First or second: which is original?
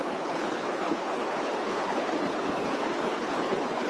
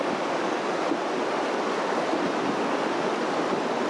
second